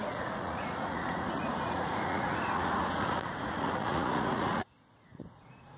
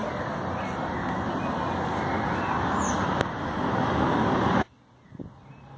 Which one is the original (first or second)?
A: second